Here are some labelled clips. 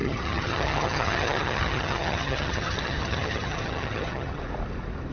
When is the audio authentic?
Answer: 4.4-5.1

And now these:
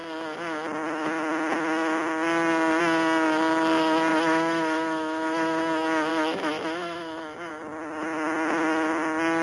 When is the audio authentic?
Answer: 0.0-4.1; 5.6-6.1; 7.5-9.4

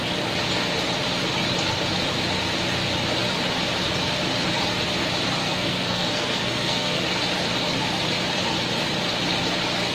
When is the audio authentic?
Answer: 0.0-5.4; 7.0-9.9

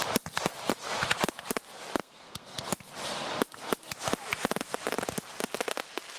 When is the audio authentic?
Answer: 0.0-2.0; 2.6-6.2